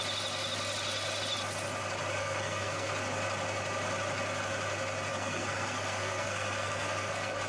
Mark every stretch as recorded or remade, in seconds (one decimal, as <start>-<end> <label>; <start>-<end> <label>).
0.0-2.2 recorded; 2.2-2.9 remade; 2.9-5.1 recorded; 5.1-7.5 remade